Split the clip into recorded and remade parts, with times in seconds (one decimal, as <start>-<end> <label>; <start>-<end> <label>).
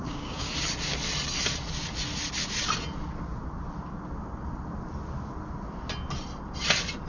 0.0-0.5 remade; 0.5-7.1 recorded